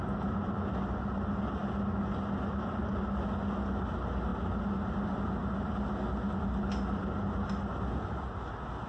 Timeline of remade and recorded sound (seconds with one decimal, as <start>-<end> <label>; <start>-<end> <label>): 0.0-8.9 recorded